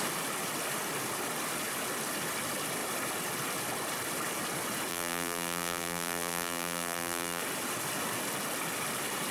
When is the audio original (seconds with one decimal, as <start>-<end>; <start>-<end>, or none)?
0.0-4.9; 7.4-9.3